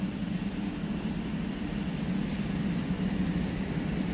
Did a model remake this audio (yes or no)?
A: no